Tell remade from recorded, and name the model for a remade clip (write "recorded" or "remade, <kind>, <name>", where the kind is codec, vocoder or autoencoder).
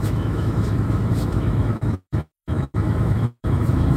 remade, autoencoder, DAC-VAE